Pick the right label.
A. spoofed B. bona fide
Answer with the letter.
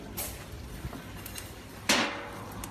B